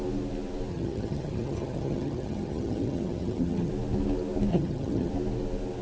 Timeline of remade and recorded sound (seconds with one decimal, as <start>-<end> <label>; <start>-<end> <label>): 0.0-0.7 recorded; 0.7-3.7 remade; 3.7-4.5 recorded; 4.5-5.1 remade; 5.1-5.8 recorded